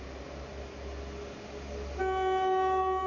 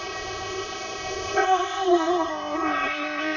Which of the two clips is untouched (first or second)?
first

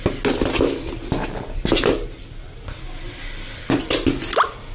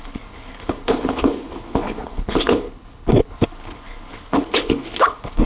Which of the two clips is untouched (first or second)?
first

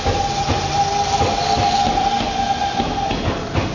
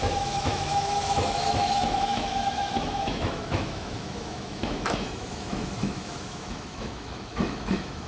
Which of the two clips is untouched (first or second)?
first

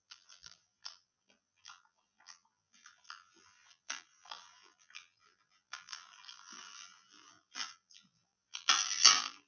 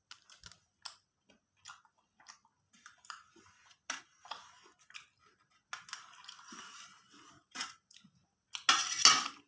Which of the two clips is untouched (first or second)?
second